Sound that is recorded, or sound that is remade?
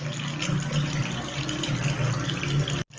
recorded